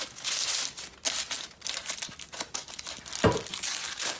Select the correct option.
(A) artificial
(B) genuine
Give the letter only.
B